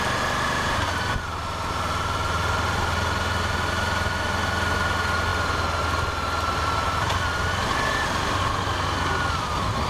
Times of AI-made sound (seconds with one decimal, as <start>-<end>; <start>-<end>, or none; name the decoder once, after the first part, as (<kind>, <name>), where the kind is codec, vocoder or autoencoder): none